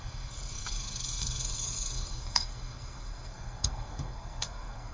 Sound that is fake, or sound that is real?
fake